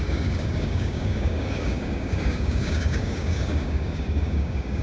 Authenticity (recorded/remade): remade